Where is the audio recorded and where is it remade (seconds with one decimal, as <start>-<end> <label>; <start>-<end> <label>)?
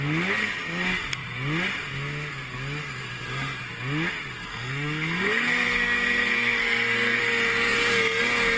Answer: 0.0-4.5 recorded; 4.5-7.2 remade; 7.2-8.6 recorded